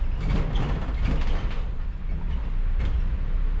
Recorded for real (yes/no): yes